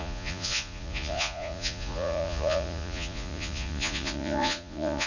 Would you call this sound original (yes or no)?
no